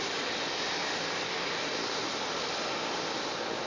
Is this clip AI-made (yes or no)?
no